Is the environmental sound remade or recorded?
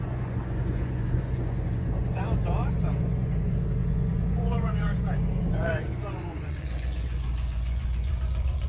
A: remade